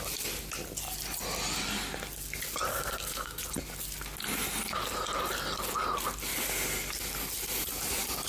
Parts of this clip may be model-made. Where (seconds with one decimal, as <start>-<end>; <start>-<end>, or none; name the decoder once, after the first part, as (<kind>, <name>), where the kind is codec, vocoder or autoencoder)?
2.7-3.4 (codec, SNAC)

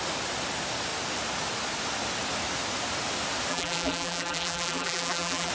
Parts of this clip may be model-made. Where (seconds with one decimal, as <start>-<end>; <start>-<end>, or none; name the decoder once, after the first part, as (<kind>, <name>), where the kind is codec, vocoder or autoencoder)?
3.5-5.5 (vocoder, BigVGAN v2)

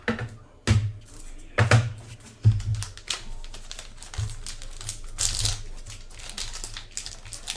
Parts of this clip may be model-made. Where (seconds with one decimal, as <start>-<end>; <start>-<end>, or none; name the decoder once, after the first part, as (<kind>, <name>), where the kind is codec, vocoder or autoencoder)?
none

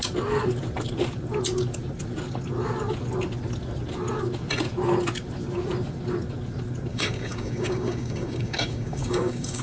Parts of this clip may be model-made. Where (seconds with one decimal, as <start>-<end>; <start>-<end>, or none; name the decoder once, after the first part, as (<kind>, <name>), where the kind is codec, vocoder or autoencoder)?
6.9-9.6 (codec, DAC)

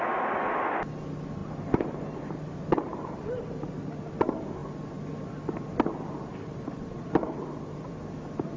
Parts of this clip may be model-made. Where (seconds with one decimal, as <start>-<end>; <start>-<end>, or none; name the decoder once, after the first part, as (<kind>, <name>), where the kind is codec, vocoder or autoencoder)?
1.4-2.4 (vocoder, BigVGAN v2); 2.9-3.5; 6.3-7.5

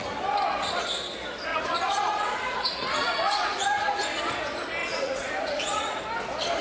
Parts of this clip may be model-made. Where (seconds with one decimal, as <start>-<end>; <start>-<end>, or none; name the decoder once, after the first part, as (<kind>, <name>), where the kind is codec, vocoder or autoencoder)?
1.5-4.2 (vocoder, Vocos); 4.8-6.0